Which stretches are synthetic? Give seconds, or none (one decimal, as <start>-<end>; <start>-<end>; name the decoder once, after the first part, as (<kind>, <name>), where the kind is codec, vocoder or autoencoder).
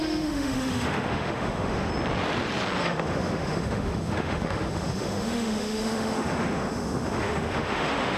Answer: 0.0-1.9 (autoencoder, DAC-VAE); 2.8-8.2